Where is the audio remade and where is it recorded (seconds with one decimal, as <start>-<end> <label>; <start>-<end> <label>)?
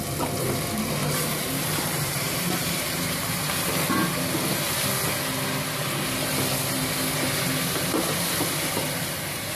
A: 0.0-1.0 recorded; 1.0-3.5 remade; 3.5-9.6 recorded